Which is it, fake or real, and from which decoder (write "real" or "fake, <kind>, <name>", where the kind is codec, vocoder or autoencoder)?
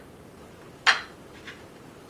real